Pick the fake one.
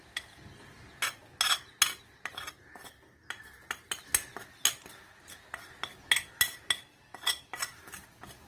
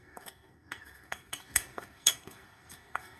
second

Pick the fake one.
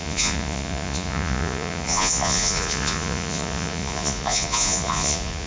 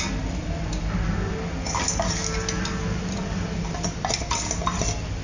first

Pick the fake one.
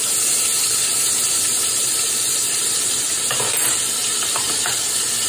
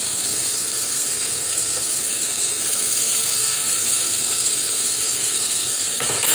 second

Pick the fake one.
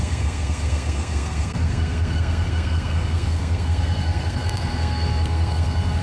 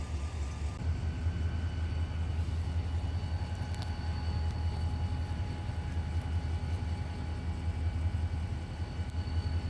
first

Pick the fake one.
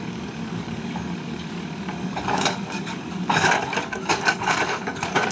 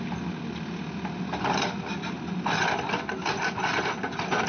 first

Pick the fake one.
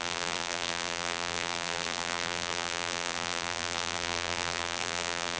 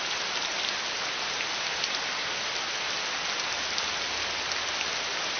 first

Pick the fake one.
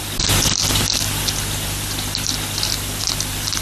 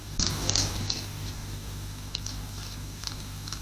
second